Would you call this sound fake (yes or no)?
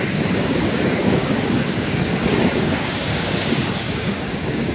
yes